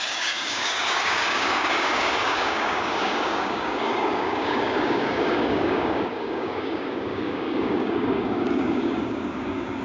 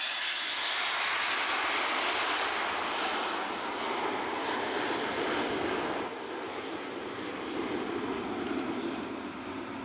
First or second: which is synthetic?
first